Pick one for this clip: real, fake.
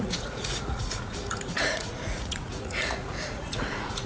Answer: fake